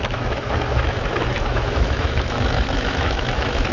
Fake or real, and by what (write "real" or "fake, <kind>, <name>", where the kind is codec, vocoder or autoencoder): fake, autoencoder, DAC-VAE